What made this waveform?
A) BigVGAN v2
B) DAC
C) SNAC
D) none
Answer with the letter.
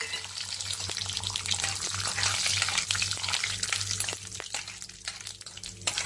D